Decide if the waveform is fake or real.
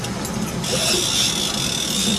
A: real